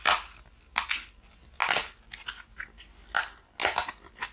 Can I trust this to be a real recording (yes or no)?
yes